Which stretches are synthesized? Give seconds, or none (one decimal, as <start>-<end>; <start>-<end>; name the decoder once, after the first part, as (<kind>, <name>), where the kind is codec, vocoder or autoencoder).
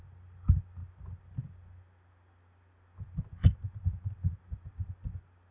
none